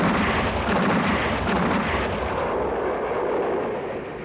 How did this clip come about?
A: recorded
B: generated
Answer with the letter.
A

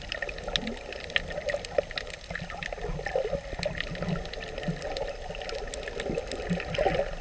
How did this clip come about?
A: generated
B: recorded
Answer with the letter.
B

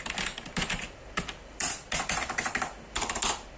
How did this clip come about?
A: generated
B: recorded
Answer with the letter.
A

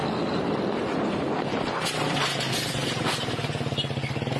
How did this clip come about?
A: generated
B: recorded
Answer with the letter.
B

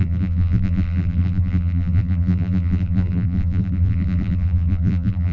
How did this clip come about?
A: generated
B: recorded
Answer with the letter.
A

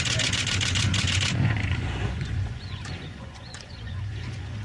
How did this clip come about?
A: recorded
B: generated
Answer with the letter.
B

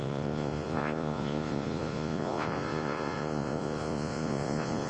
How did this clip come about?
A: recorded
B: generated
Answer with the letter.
B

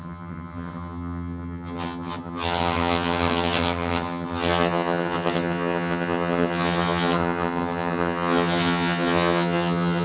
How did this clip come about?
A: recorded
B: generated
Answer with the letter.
B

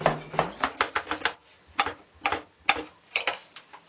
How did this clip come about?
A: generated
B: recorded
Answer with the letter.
B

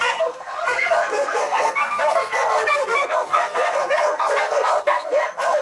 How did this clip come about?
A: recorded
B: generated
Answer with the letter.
B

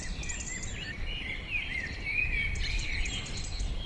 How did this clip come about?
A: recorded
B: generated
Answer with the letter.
B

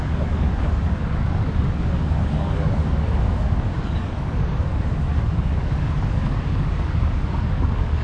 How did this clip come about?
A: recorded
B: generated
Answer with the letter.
B